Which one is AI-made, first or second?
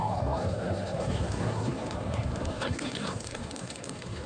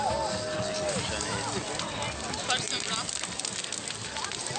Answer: first